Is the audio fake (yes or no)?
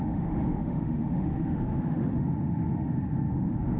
yes